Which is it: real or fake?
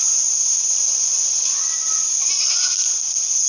real